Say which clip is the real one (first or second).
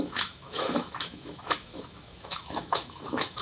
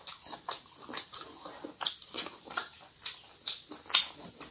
second